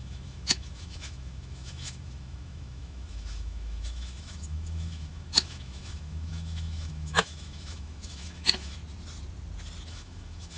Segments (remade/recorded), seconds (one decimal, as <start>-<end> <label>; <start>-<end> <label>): 0.0-8.8 remade; 8.8-9.9 recorded; 9.9-10.6 remade